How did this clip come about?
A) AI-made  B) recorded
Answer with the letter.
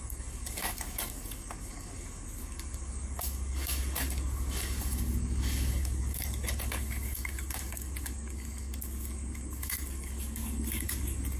A